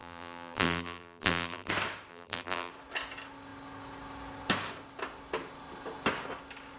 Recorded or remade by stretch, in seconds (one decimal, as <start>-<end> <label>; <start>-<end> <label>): 0.0-1.7 remade; 1.7-2.1 recorded; 2.1-2.7 remade; 2.7-6.8 recorded